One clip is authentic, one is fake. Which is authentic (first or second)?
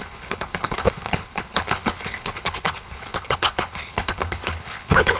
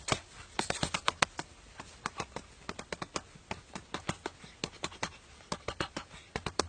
second